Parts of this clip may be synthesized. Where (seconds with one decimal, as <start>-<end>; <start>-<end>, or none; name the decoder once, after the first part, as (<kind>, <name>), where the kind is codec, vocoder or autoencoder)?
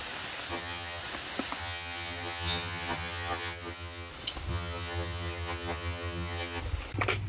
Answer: 0.5-1.0 (vocoder, HiFi-GAN); 1.6-4.1; 4.5-6.6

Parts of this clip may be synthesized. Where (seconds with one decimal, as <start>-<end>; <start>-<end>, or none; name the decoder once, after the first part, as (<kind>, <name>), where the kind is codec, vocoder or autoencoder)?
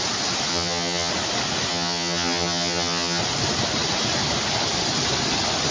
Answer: 0.5-1.1 (vocoder, HiFi-GAN); 1.7-3.2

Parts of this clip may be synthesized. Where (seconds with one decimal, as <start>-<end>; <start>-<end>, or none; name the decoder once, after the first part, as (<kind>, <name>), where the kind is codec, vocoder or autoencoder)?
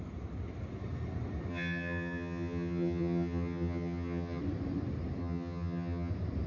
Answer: 1.5-4.4 (vocoder, HiFi-GAN); 5.2-6.1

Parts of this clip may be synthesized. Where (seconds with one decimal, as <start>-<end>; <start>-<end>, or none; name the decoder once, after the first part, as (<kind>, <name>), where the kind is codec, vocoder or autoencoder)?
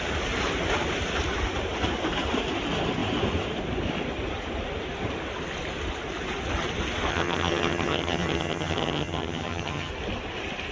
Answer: 7.1-9.9 (vocoder, HiFi-GAN)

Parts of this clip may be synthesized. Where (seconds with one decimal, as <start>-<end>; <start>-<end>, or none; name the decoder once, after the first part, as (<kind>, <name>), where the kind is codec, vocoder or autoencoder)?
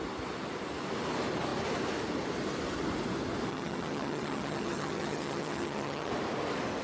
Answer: 3.5-6.1 (vocoder, HiFi-GAN)